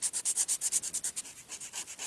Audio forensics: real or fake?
real